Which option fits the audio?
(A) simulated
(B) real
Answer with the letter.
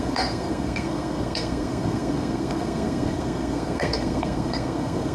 A